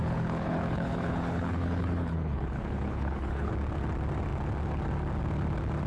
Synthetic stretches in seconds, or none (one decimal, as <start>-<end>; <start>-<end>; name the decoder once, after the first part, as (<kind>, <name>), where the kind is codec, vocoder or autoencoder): 0.0-3.5 (codec, HILCodec)